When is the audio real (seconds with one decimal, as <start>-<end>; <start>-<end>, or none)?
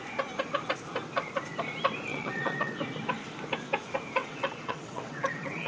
0.0-2.1; 2.7-4.2